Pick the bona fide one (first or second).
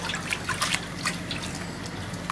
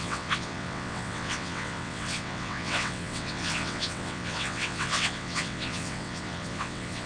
first